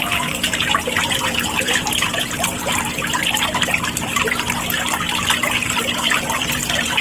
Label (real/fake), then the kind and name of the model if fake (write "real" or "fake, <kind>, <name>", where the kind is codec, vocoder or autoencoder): fake, vocoder, BigVGAN v2